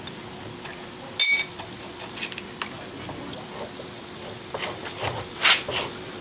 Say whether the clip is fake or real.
real